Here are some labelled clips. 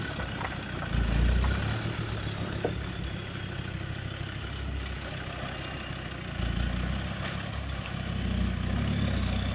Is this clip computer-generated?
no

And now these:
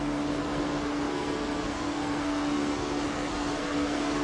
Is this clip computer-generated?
yes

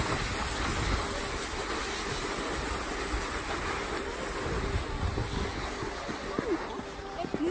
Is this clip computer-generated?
no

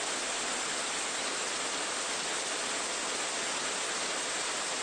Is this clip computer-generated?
no